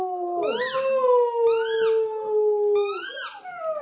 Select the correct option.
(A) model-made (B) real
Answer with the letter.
B